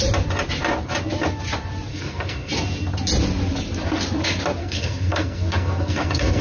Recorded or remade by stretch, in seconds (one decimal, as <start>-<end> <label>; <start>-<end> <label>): 0.0-1.9 recorded; 1.9-2.5 remade; 2.5-4.6 recorded; 4.6-6.4 remade